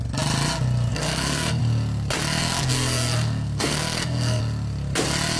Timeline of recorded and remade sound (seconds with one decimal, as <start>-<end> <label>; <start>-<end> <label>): 0.0-0.9 recorded; 0.9-1.6 remade; 1.6-2.4 recorded; 2.4-4.4 remade; 4.4-5.4 recorded